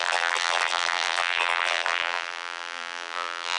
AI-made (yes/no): yes